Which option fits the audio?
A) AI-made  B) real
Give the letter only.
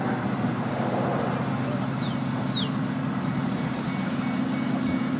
B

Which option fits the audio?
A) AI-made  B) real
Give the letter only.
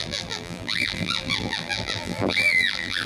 A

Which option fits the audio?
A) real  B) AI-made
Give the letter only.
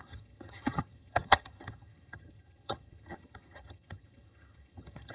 B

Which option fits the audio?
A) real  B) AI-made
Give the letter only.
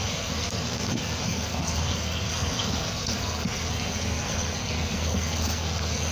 B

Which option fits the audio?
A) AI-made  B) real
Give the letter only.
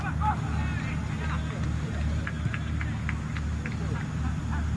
B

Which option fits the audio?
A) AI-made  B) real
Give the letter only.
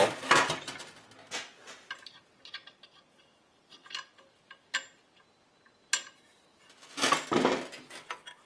B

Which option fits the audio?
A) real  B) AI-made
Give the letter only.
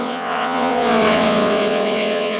B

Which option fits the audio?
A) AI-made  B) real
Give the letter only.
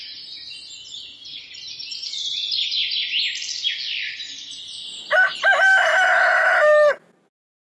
B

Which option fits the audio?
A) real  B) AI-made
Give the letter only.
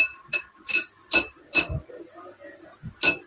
A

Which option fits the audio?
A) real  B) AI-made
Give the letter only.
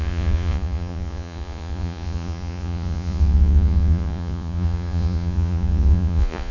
B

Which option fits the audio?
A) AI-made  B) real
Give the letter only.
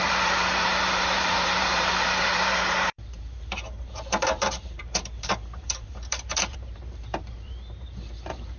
A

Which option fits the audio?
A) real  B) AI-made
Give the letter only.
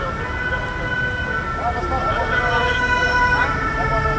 A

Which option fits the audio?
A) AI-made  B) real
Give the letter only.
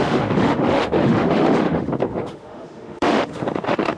A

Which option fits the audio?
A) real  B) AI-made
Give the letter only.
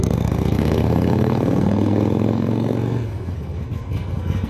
B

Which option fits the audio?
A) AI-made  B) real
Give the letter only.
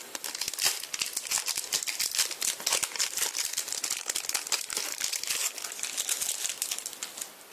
B